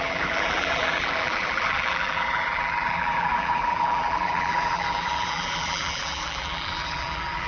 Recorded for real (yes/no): no